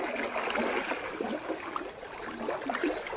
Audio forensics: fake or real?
real